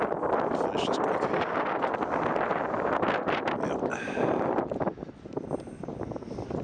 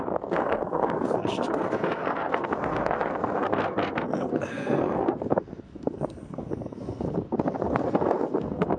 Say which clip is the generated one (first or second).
second